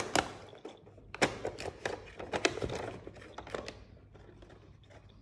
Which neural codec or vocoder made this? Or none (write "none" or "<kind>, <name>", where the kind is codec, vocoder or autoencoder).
none